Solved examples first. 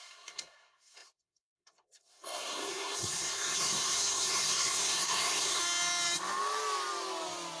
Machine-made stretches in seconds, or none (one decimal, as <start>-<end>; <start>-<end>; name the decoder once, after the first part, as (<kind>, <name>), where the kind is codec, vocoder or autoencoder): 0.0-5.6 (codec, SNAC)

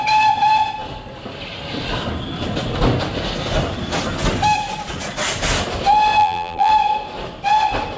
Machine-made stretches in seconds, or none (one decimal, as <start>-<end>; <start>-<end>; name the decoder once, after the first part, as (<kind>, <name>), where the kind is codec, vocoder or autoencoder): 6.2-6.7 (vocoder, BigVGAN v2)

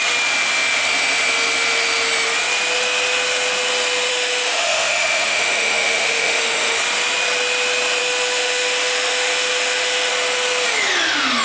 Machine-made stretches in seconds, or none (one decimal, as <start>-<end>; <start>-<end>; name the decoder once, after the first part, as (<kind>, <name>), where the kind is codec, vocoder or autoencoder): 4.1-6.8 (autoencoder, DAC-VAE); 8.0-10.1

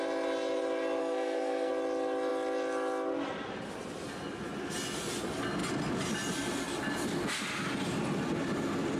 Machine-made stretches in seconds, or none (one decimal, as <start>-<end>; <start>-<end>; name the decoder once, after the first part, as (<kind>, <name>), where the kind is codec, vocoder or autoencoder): 1.0-1.7 (codec, SNAC)

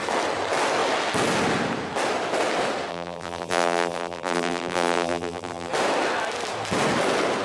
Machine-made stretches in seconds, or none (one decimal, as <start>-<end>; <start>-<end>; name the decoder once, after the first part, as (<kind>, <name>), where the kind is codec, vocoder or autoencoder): 2.9-5.7 (vocoder, BigVGAN v2)